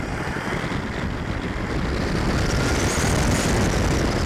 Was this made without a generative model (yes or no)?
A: yes